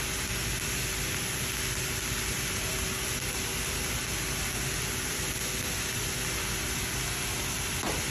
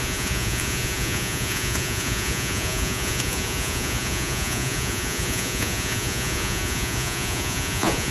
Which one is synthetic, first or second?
second